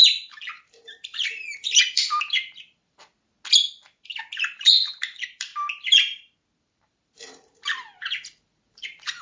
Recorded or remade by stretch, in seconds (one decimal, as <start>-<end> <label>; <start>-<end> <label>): 0.0-3.1 remade; 3.1-4.4 recorded; 4.4-5.5 remade; 5.5-6.6 recorded; 6.6-9.2 remade